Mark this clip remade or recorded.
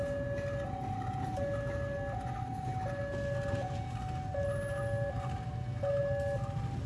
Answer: recorded